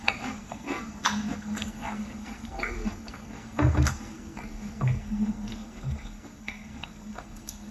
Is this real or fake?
fake